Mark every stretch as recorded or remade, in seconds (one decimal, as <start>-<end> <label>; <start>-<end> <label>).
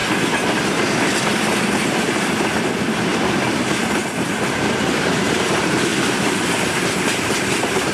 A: 0.0-4.5 recorded; 4.5-5.9 remade; 5.9-7.5 recorded; 7.5-7.9 remade